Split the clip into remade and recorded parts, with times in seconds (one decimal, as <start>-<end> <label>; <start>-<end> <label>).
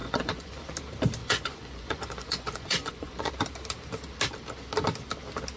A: 0.0-0.7 remade; 0.7-1.2 recorded; 1.2-3.3 remade; 3.3-5.6 recorded